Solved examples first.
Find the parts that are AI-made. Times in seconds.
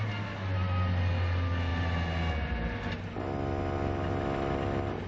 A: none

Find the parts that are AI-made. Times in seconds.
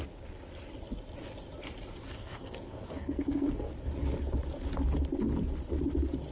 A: 1.9-3.7 (codec, SNAC)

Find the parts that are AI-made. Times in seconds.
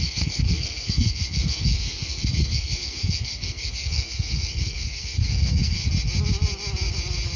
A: 0.0-5.8 (codec, SNAC)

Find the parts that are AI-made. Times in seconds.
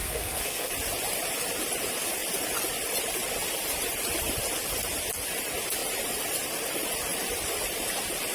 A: 0.0-0.7 (codec, SNAC)